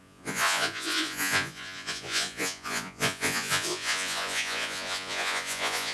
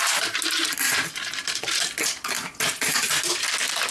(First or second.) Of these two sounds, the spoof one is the first